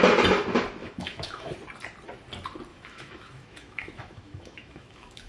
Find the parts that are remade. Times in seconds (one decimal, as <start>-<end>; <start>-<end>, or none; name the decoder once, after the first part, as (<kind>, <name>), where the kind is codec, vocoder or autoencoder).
0.8-1.5 (autoencoder, DAC-VAE); 2.7-5.3